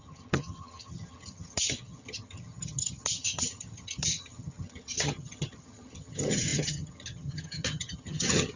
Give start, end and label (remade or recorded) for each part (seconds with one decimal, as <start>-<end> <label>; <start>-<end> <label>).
0.0-8.6 remade